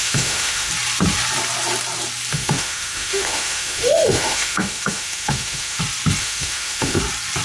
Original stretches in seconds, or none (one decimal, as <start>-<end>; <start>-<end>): 0.7-2.3; 5.8-6.2; 7.0-7.4